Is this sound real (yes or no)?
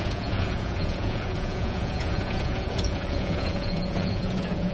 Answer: no